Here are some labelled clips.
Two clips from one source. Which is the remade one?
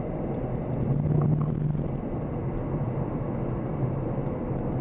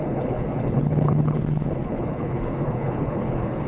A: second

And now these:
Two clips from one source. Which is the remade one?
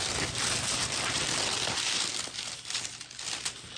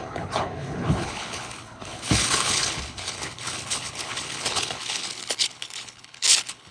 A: second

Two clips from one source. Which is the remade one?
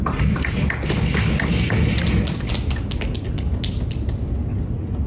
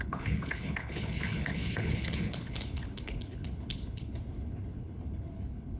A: second